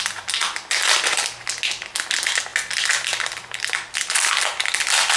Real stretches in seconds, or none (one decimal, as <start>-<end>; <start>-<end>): 0.0-5.2